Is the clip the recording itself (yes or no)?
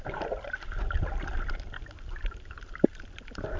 yes